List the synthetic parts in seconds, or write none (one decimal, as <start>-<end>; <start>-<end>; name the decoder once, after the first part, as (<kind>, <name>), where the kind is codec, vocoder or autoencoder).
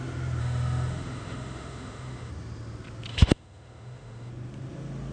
0.4-2.3 (autoencoder, DAC-VAE); 3.1-4.3